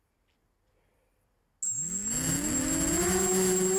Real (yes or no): yes